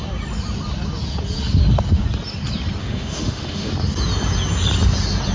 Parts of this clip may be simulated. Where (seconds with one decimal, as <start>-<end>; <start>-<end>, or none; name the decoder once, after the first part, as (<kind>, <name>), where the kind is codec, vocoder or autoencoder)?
2.8-3.7 (autoencoder, DAC-VAE)

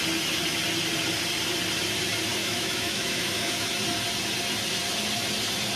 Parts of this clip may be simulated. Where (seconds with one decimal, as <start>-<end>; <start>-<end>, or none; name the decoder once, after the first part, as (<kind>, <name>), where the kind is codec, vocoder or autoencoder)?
2.4-3.7 (autoencoder, DAC-VAE)

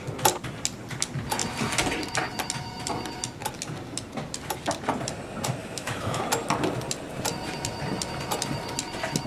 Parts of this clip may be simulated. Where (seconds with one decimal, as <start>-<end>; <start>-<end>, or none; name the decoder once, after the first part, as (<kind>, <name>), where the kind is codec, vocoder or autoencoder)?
5.6-6.2 (autoencoder, DAC-VAE)